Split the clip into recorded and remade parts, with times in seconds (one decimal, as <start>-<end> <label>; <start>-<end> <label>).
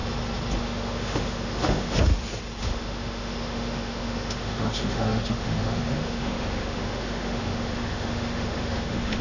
0.0-0.6 recorded; 0.6-2.1 remade; 2.1-2.6 recorded; 2.6-9.2 remade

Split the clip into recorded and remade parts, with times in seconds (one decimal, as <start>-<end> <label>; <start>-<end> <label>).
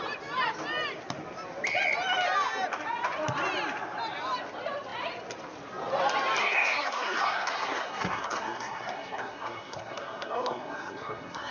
0.0-6.4 recorded; 6.4-11.5 remade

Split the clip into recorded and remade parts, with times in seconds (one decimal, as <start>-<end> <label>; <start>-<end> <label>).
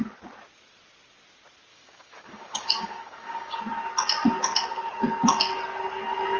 0.0-1.7 recorded; 1.7-3.6 remade; 3.6-6.4 recorded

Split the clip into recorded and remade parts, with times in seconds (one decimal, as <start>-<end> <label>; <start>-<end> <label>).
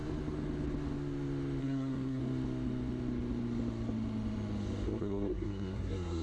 0.0-1.6 recorded; 1.6-2.2 remade; 2.2-5.0 recorded; 5.0-6.2 remade